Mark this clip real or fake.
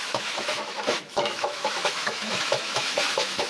fake